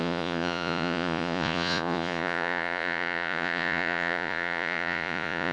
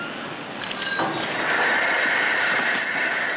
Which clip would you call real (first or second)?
second